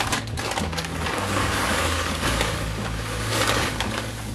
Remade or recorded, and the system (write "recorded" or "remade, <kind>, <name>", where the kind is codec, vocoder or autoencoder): remade, codec, DAC